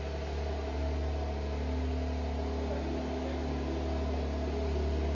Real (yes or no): yes